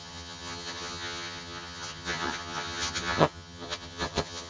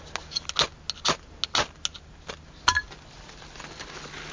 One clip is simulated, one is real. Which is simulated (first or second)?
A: first